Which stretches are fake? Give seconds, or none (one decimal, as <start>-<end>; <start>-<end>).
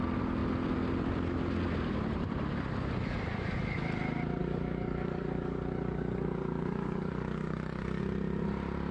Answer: 4.4-8.0